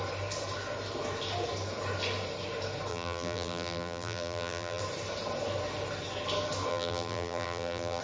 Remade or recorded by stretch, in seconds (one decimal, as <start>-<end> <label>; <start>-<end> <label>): 0.0-2.9 recorded; 2.9-4.8 remade; 4.8-6.7 recorded; 6.7-8.0 remade